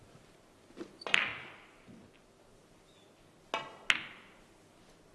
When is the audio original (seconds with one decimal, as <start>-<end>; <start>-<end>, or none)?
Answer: 0.0-5.1